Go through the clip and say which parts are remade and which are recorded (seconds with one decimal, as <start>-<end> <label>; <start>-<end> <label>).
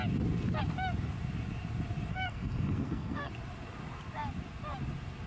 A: 0.0-2.1 recorded; 2.1-3.3 remade; 3.3-5.3 recorded